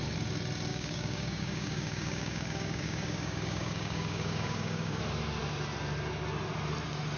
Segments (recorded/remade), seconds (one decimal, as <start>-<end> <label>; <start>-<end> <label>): 0.0-0.7 recorded; 0.7-5.0 remade; 5.0-7.2 recorded